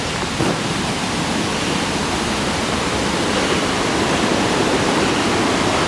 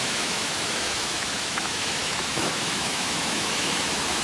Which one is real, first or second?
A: first